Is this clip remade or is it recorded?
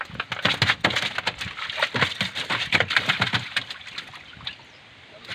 recorded